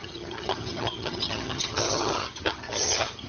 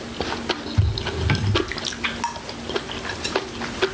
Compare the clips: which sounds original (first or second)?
second